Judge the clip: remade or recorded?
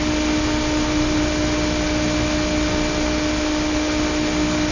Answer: recorded